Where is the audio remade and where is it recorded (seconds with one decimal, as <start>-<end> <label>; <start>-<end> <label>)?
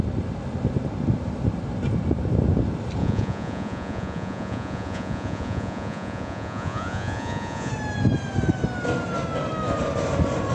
0.0-3.0 recorded; 3.0-7.7 remade; 7.7-10.5 recorded